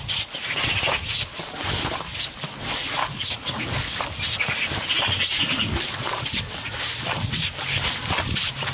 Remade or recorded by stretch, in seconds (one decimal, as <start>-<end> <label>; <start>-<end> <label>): 0.0-3.0 recorded; 3.0-4.0 remade; 4.0-8.7 recorded